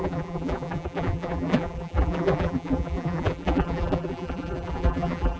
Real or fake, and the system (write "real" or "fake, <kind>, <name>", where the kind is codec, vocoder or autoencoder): fake, vocoder, BigVGAN v2